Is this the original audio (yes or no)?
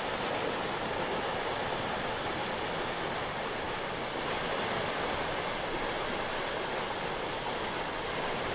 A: yes